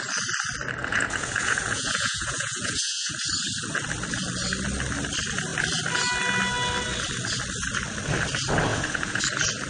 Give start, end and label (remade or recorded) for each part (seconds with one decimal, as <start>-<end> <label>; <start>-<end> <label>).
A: 0.0-0.8 recorded; 0.8-3.1 remade; 3.1-8.7 recorded; 8.7-9.2 remade; 9.2-9.7 recorded